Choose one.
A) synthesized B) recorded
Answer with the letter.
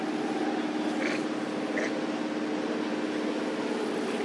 B